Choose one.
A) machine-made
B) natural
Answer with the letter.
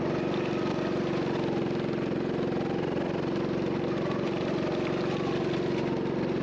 B